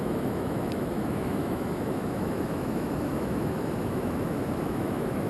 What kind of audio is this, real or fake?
fake